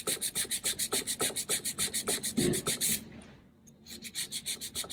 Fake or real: real